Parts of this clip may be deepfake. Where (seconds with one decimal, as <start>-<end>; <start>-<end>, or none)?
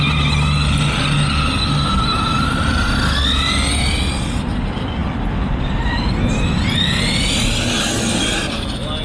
none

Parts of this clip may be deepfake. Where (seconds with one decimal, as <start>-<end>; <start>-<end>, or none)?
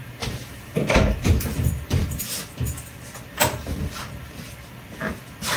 0.0-1.7; 2.1-3.1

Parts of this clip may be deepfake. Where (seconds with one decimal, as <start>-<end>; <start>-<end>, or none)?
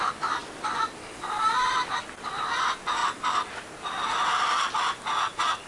none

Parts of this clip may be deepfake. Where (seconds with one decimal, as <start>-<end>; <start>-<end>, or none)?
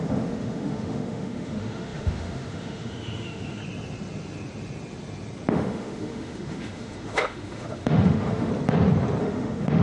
0.0-3.6; 5.5-8.5; 9.2-9.8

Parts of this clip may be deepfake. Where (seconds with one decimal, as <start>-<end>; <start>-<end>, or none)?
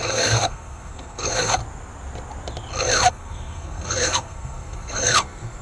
0.0-1.6; 3.1-5.6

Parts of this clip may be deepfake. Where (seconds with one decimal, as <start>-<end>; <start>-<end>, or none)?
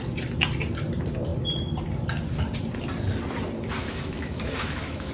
3.8-5.1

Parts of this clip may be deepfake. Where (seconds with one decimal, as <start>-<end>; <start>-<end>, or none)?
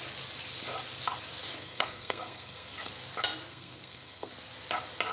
1.6-2.9; 3.5-4.3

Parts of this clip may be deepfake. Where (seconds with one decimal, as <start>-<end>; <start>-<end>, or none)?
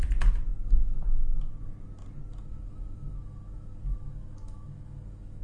2.3-5.4